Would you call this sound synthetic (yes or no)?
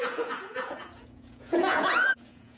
yes